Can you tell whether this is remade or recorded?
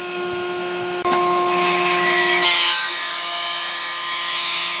remade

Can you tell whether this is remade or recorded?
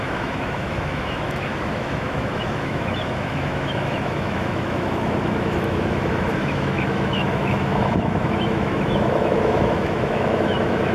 remade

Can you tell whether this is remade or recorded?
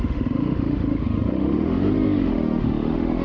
remade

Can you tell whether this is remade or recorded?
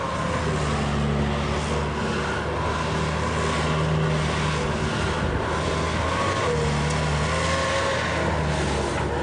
recorded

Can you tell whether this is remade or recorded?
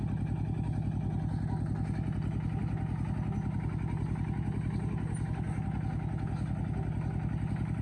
recorded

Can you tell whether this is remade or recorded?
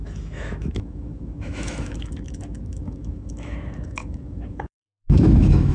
remade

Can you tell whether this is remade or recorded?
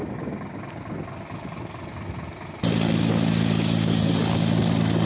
recorded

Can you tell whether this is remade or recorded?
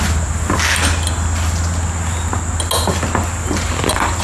recorded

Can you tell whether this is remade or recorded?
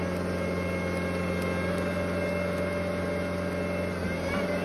recorded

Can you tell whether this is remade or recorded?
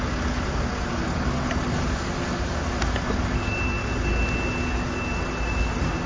recorded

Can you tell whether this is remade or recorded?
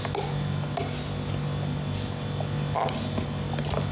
recorded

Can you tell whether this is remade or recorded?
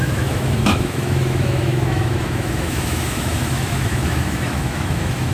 remade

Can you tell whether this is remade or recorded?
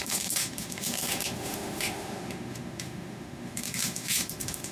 remade